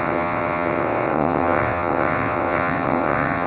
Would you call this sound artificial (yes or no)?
yes